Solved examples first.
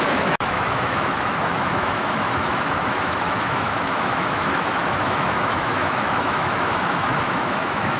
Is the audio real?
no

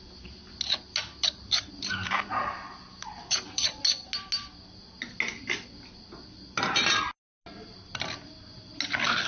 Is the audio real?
yes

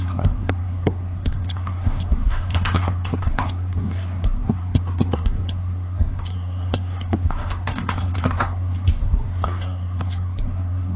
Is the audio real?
no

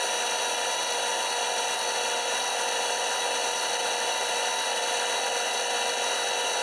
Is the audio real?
yes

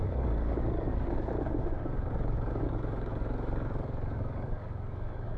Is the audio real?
no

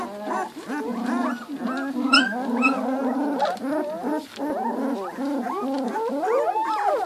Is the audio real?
yes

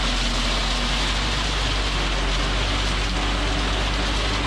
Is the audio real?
yes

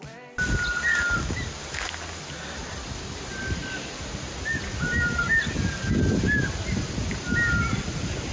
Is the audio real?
yes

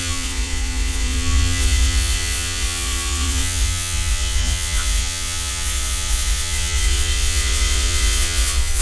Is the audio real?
no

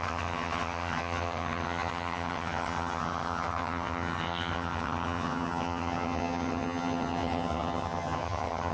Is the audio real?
no